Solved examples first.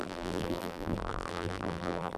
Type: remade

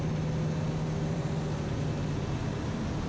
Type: recorded